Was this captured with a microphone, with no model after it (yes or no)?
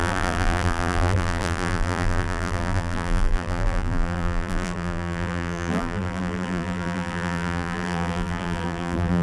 no